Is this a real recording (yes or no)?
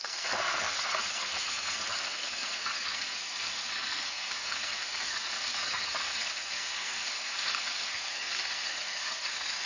no